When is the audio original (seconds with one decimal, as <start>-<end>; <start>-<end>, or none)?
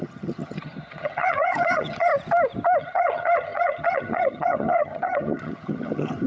2.1-2.8